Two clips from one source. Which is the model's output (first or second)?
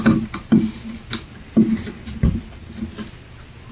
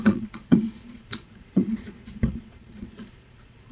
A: second